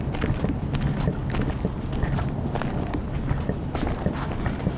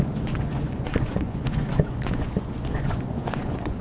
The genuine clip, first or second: first